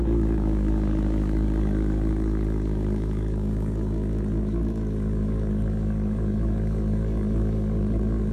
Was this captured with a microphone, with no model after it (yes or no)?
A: no